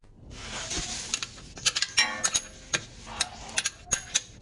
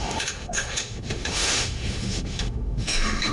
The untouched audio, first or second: first